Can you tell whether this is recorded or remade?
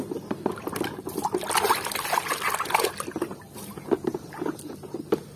recorded